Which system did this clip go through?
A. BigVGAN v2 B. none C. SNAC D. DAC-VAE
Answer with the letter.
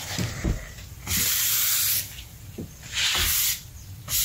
A